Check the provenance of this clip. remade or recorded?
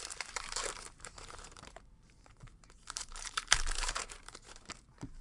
remade